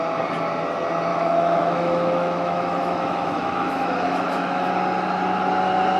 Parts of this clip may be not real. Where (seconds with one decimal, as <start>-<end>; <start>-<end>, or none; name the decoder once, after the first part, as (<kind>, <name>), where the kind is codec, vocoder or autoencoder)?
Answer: 1.1-4.7 (autoencoder, DAC-VAE)